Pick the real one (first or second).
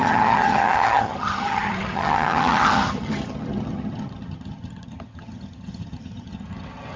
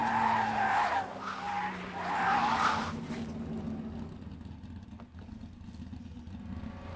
second